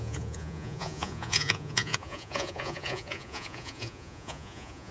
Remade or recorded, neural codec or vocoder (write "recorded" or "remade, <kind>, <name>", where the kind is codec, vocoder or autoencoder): remade, vocoder, Vocos